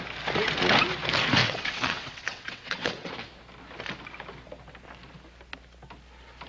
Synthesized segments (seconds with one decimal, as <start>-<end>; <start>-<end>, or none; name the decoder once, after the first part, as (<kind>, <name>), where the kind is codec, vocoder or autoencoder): 1.4-3.1 (vocoder, WaveNeXt)

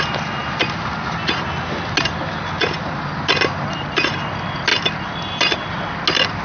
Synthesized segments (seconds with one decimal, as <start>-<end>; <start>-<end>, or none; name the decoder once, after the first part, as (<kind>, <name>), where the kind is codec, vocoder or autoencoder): none

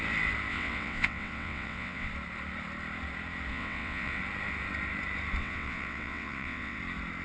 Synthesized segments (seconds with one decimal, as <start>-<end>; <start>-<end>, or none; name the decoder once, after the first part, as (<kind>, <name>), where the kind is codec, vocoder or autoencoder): 0.5-2.1 (vocoder, WaveNeXt); 3.5-4.2; 5.4-6.8